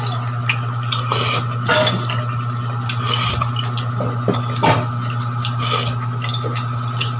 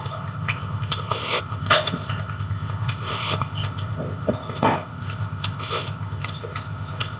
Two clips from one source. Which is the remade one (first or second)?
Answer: second